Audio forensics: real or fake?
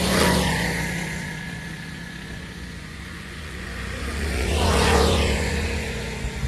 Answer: fake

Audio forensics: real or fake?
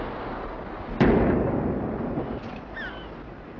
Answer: real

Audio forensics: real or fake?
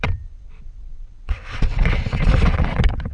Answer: fake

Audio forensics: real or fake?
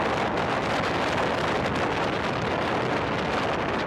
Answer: real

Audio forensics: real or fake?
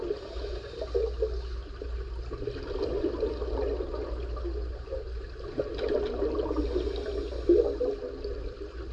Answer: real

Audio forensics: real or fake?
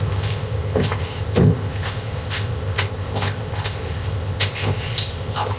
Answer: fake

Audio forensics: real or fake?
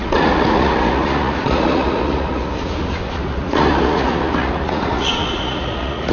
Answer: fake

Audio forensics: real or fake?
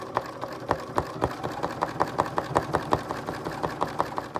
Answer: real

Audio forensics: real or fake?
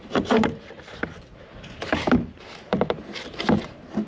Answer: fake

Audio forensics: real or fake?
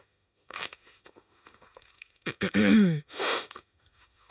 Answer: fake